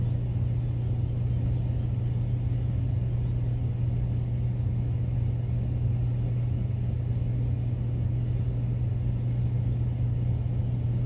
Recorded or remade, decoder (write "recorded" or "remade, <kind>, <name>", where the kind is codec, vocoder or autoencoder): recorded